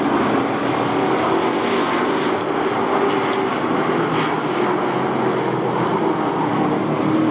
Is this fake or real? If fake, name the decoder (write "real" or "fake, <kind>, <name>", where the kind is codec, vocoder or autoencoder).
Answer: real